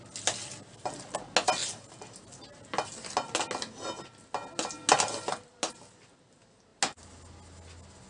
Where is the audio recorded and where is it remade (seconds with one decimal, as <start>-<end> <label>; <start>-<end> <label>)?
0.0-8.1 recorded